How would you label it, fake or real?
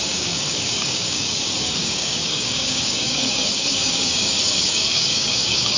fake